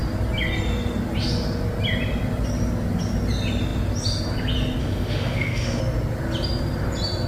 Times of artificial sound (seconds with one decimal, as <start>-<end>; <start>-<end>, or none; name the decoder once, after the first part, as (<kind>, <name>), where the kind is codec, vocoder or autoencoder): 4.8-5.8 (autoencoder, DAC-VAE)